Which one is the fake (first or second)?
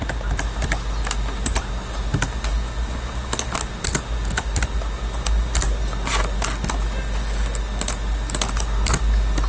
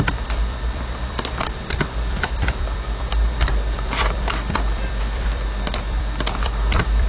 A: second